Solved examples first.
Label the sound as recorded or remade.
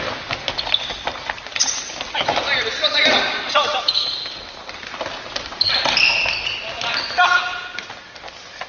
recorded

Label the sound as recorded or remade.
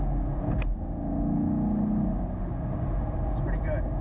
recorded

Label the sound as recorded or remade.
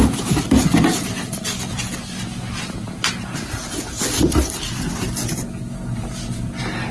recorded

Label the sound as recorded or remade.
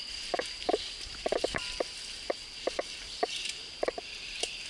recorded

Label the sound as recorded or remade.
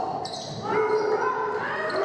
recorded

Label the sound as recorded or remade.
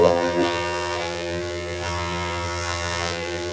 remade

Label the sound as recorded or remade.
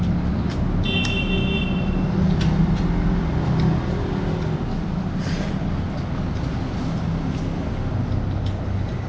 recorded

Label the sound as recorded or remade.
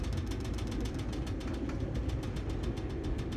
recorded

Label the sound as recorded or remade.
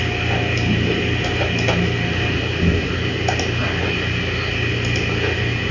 recorded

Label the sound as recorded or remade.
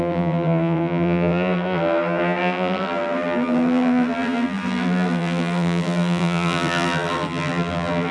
remade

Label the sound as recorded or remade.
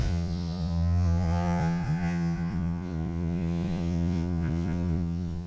remade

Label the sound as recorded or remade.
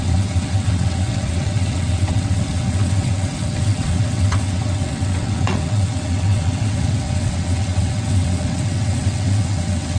remade